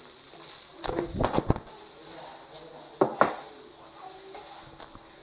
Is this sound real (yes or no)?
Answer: yes